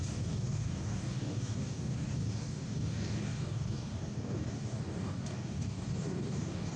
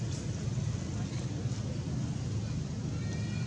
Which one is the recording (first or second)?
second